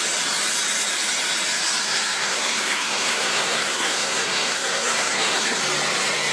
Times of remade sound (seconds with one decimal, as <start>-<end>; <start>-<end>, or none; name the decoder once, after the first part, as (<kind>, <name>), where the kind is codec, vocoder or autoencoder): 1.8-5.6 (codec, SNAC)